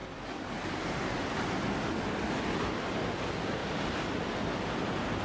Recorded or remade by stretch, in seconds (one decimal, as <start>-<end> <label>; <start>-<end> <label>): 0.0-3.6 recorded; 3.6-4.4 remade; 4.4-5.2 recorded